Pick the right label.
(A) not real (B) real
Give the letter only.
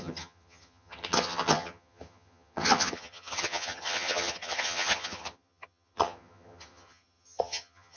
A